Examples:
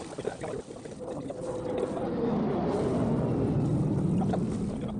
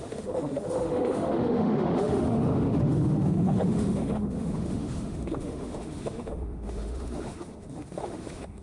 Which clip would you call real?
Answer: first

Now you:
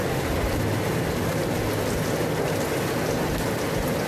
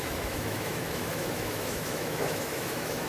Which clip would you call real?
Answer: first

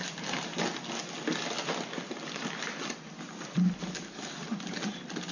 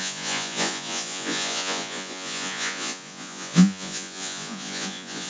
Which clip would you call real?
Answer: first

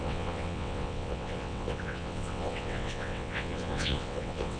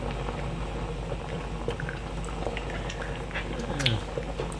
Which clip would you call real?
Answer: second